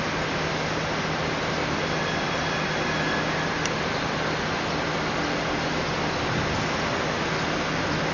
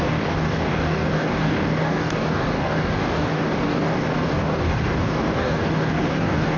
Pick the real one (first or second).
first